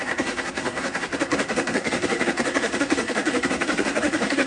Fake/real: fake